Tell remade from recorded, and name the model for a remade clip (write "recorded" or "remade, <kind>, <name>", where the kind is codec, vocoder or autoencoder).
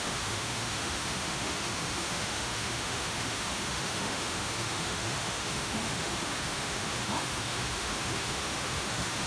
remade, autoencoder, DAC-VAE